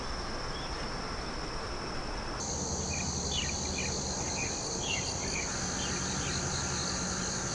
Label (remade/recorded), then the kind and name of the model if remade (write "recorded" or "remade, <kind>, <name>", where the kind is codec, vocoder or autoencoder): recorded